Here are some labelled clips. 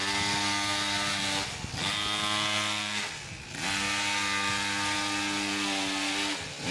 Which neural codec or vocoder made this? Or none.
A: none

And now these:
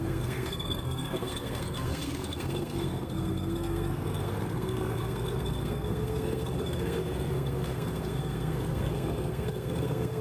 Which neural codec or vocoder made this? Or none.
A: codec, SNAC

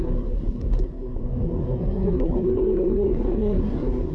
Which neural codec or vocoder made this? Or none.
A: codec, SNAC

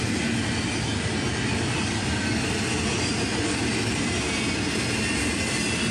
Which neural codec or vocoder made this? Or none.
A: none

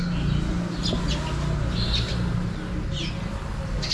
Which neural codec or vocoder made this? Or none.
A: none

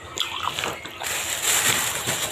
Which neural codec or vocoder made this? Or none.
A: none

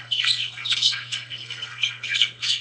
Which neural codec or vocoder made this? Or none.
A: codec, SNAC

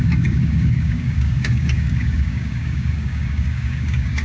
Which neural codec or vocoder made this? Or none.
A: codec, DAC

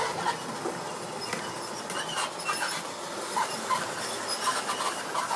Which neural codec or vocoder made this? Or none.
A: none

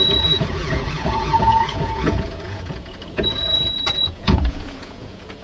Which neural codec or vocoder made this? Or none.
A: vocoder, Vocos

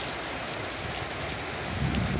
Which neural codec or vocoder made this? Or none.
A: none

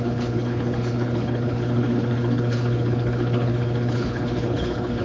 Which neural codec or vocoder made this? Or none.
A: codec, HILCodec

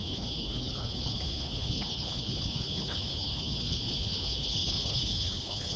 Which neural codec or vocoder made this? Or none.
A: codec, HILCodec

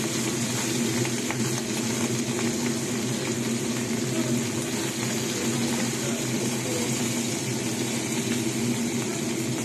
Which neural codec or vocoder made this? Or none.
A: none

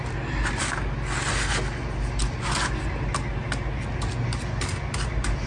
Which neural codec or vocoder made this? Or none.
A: none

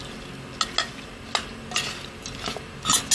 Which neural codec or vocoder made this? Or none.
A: none